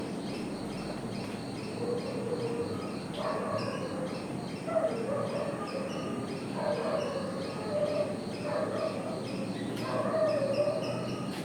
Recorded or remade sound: recorded